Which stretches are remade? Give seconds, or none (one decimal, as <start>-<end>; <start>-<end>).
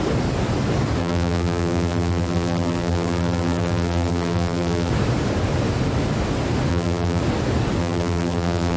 1.0-4.9; 6.7-7.2; 7.8-8.8